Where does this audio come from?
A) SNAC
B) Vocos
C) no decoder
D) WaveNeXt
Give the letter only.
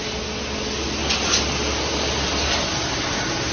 C